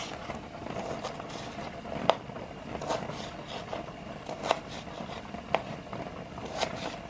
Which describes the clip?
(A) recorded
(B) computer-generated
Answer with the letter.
A